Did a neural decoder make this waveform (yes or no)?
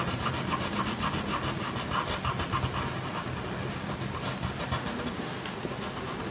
no